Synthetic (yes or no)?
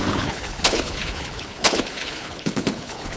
yes